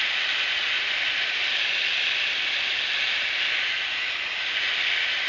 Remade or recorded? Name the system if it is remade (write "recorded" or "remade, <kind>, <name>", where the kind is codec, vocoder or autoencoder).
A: recorded